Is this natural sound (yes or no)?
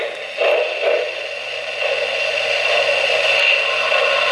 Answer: yes